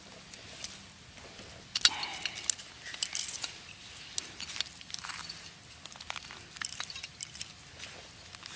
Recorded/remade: recorded